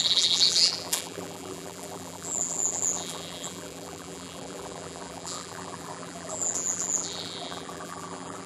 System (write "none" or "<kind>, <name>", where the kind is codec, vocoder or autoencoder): vocoder, BigVGAN v2